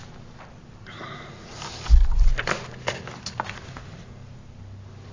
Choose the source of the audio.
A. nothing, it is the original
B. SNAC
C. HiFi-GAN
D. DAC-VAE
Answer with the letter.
A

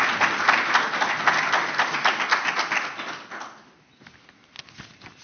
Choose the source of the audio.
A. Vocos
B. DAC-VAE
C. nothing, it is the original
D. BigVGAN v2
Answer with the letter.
C